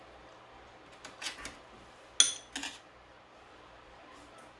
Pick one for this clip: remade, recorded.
recorded